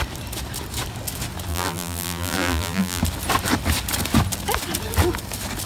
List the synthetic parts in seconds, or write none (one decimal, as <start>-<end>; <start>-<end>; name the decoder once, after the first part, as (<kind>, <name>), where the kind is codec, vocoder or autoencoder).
1.5-3.0 (vocoder, BigVGAN v2)